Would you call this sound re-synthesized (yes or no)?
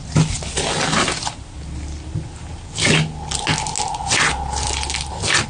no